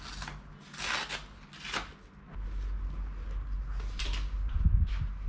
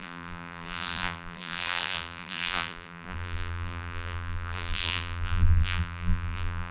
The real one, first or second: first